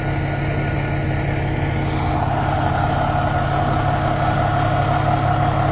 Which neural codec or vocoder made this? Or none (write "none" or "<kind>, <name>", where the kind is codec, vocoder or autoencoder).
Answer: none